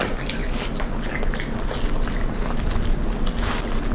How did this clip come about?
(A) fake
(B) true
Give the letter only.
B